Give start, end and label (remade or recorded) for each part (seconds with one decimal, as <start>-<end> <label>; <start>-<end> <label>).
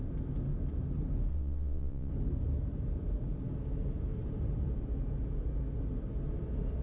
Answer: 0.0-1.3 recorded; 1.3-2.1 remade; 2.1-6.8 recorded